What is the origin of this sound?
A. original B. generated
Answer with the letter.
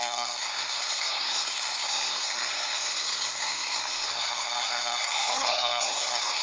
B